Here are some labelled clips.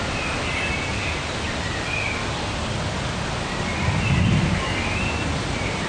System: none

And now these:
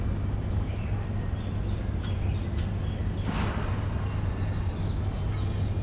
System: none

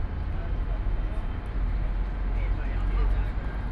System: none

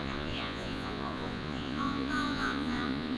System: vocoder, Vocos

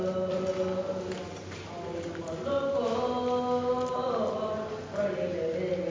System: none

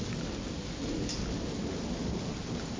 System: none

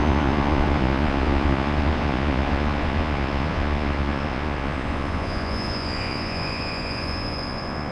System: vocoder, Vocos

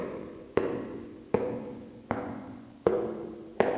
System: vocoder, Vocos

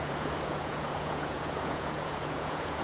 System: vocoder, Vocos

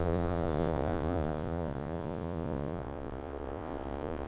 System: vocoder, Vocos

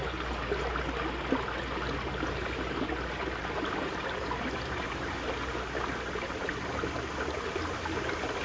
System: none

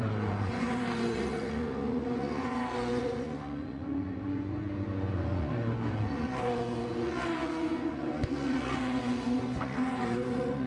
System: vocoder, Vocos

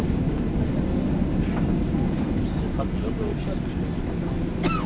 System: none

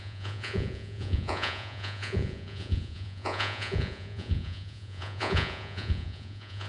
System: vocoder, Vocos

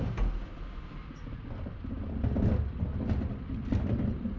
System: none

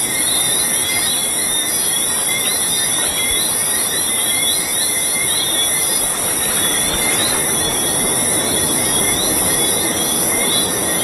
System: none